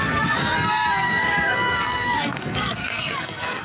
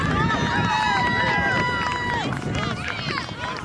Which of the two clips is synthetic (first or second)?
first